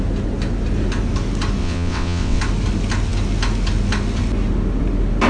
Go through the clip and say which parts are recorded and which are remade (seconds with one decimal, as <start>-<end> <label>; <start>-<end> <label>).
0.0-1.6 recorded; 1.6-2.4 remade; 2.4-5.3 recorded